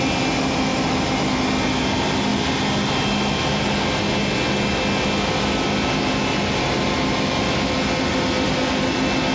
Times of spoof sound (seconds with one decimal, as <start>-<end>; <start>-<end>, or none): none